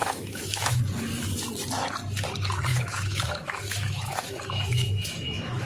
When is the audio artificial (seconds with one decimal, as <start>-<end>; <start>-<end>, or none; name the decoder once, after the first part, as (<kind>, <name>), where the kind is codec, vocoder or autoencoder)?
0.0-0.8 (autoencoder, DAC-VAE); 2.7-5.7